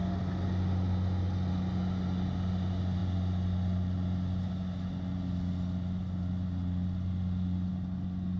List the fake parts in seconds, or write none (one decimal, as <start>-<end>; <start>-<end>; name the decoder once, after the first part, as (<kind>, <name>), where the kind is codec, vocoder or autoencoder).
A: none